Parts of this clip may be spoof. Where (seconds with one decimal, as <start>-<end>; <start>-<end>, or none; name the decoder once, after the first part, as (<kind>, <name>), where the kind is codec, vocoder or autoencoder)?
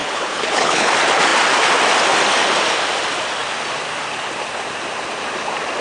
0.0-0.9 (codec, HILCodec)